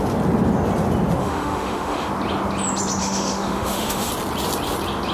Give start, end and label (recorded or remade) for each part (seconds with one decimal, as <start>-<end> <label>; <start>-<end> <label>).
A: 0.0-1.2 recorded; 1.2-2.1 remade; 2.1-3.0 recorded; 3.0-4.1 remade; 4.1-5.1 recorded